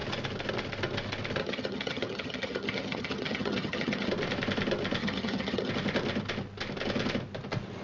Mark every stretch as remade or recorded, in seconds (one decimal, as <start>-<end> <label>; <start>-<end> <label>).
0.0-1.4 recorded; 1.4-4.1 remade; 4.1-5.0 recorded; 5.0-5.7 remade; 5.7-7.8 recorded